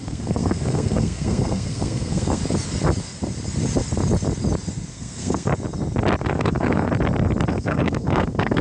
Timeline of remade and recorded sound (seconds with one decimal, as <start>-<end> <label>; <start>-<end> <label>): 0.0-2.4 remade; 2.4-4.9 recorded; 4.9-5.5 remade; 5.5-6.2 recorded; 6.2-6.9 remade; 6.9-7.5 recorded; 7.5-8.6 remade